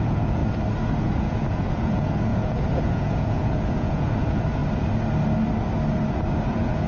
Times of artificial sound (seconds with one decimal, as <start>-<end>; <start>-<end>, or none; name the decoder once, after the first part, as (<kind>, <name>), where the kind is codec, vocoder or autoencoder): 0.0-0.4 (vocoder, Vocos); 1.0-4.6; 6.5-6.9